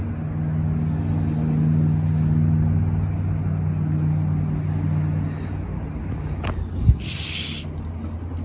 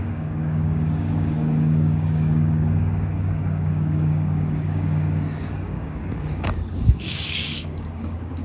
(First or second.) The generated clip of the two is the second